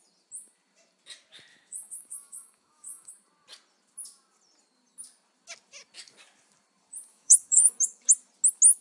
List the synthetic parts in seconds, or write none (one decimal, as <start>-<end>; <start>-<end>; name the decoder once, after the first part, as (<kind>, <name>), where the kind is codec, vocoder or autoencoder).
1.5-3.1 (autoencoder, DAC-VAE); 7.1-8.1